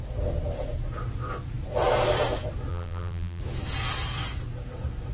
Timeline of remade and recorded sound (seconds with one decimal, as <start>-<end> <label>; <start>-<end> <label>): 0.0-2.7 recorded; 2.7-3.4 remade; 3.4-5.1 recorded